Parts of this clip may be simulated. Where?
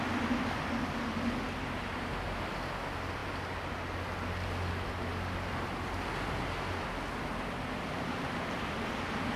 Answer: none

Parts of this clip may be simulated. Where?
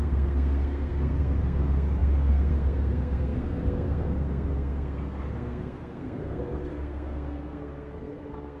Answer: 0.0-8.6 (codec, SNAC)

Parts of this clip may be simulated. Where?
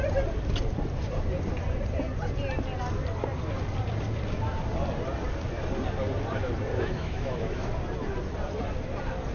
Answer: 6.7-7.7 (autoencoder, DAC-VAE)